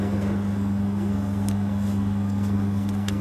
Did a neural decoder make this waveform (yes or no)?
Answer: yes